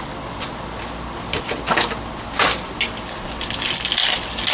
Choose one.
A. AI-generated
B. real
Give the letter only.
B